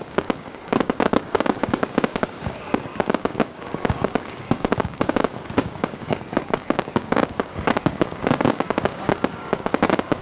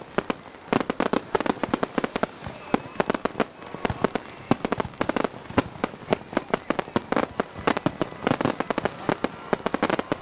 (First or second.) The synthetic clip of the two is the first